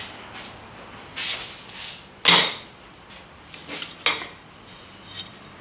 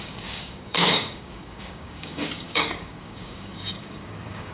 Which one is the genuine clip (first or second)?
first